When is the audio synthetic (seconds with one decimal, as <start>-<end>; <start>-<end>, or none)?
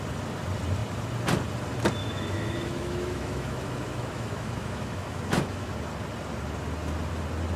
2.0-5.7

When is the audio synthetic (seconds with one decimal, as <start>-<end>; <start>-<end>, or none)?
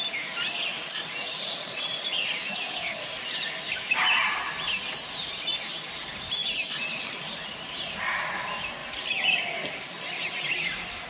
none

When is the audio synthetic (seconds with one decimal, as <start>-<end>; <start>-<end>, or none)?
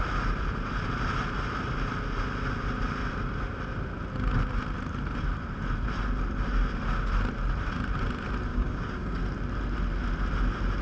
8.5-9.2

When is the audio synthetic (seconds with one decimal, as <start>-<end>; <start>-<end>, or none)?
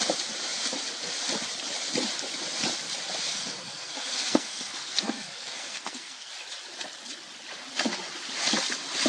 3.3-6.3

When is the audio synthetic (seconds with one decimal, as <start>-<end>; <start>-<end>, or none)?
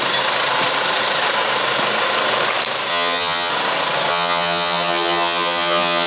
2.9-3.5; 4.1-6.1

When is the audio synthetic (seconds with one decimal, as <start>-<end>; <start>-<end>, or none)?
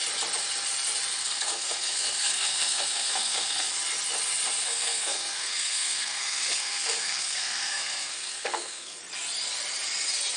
1.2-3.7; 4.6-9.0